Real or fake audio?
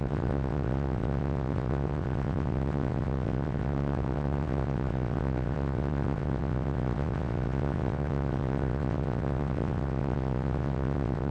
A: fake